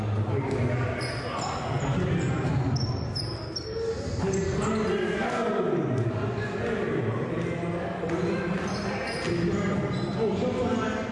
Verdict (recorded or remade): recorded